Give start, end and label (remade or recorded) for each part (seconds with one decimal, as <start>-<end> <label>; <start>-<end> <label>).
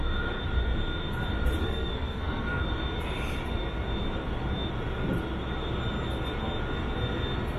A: 0.0-1.6 recorded; 1.6-2.6 remade; 2.6-7.6 recorded